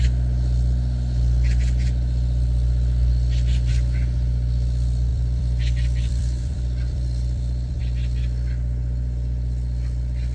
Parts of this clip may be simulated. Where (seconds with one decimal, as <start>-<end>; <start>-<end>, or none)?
5.1-7.8